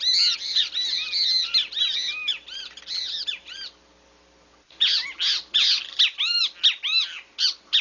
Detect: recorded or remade recorded